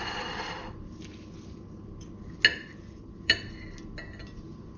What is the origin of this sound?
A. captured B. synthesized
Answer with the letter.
A